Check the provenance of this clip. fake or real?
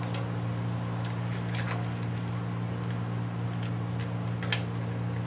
real